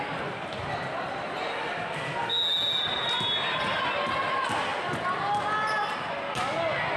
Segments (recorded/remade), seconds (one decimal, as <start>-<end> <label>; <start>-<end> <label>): 0.0-7.0 recorded